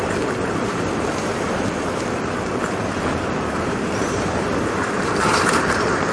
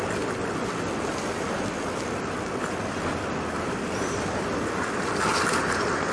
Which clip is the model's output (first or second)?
first